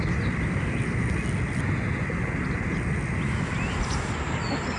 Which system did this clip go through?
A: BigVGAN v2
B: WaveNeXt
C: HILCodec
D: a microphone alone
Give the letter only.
D